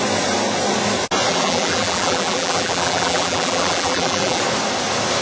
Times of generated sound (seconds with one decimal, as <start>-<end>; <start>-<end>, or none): 1.3-4.4